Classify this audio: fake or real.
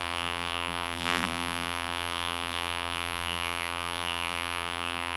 fake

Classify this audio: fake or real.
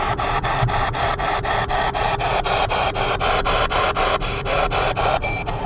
real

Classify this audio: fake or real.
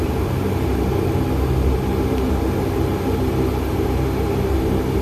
real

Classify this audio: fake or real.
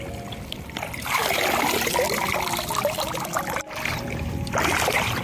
fake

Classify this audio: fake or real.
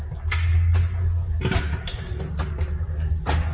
real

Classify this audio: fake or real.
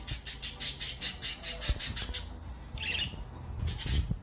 real